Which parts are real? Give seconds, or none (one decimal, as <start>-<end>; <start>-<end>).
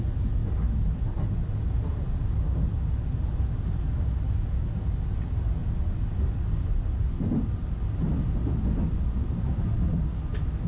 0.0-10.7